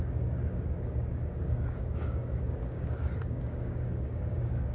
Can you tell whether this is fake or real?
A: fake